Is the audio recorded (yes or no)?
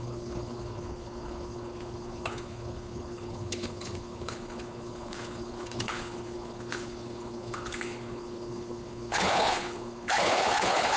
no